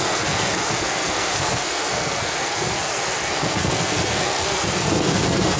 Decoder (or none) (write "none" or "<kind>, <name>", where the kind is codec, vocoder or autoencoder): codec, SNAC